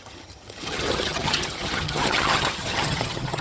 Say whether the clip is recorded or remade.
remade